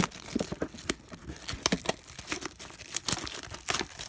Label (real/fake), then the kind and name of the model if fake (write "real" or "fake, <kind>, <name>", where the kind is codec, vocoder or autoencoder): real